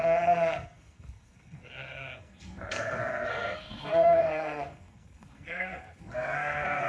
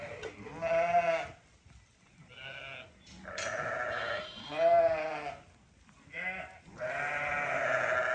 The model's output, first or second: first